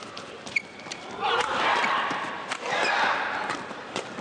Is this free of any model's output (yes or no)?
yes